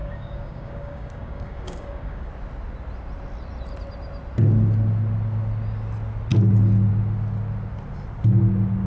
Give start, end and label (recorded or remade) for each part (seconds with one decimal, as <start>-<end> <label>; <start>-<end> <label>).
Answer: 0.0-2.3 remade; 2.3-8.9 recorded